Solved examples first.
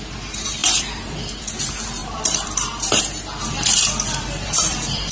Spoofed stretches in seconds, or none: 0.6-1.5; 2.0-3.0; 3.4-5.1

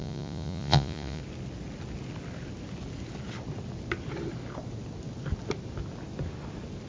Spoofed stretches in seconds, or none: 0.0-1.2

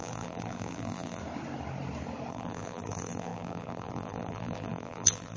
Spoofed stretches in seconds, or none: 0.0-1.2; 2.3-5.4